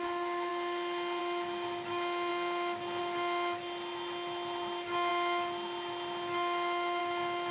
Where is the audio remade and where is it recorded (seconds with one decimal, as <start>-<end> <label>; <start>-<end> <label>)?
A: 0.0-7.5 recorded

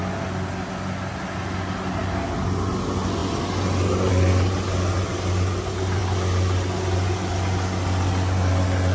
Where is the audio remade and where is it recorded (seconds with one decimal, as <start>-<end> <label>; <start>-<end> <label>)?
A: 0.0-8.9 recorded

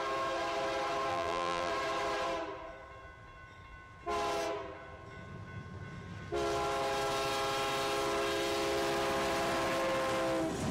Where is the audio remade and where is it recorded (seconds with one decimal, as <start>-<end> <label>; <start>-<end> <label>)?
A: 0.0-1.1 recorded; 1.1-1.7 remade; 1.7-10.7 recorded

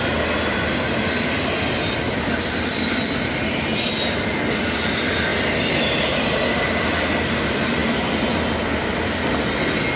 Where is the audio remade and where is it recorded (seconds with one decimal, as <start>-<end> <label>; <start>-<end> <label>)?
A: 0.0-10.0 recorded

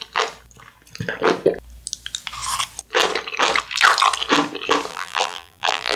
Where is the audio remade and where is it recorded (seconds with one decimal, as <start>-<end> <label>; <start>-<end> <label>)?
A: 0.0-4.9 recorded; 4.9-6.0 remade

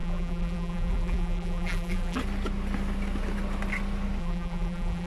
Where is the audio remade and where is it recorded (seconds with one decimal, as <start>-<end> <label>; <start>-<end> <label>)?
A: 0.0-2.2 remade; 2.2-4.2 recorded; 4.2-5.1 remade

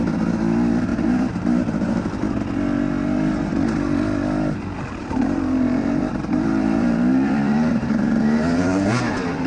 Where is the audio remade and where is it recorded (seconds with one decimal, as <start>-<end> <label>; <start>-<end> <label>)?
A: 0.0-0.9 recorded; 0.9-2.0 remade; 2.0-5.0 recorded; 5.0-9.1 remade; 9.1-9.5 recorded